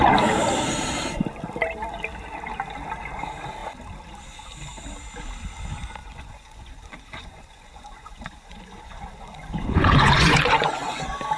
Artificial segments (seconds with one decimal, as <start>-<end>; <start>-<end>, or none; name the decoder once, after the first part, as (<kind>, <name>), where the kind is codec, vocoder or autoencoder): 6.0-11.0 (vocoder, Vocos)